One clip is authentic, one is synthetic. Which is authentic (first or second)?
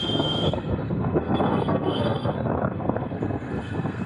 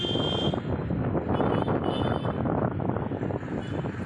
second